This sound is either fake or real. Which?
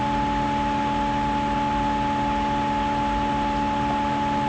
real